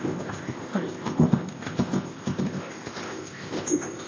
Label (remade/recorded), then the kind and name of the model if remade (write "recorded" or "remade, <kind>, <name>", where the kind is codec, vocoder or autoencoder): remade, codec, ZipCodec